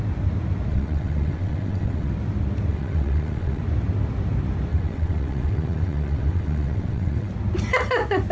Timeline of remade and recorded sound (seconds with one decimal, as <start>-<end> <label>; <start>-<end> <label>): 0.0-0.7 recorded; 0.7-2.1 remade; 2.1-2.7 recorded; 2.7-3.6 remade; 3.6-4.7 recorded; 4.7-7.3 remade; 7.3-8.3 recorded